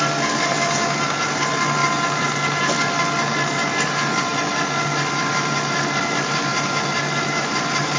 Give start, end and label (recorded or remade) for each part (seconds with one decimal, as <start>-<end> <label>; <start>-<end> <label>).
0.0-8.0 recorded